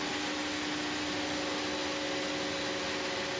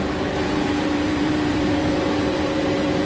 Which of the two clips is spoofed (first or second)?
second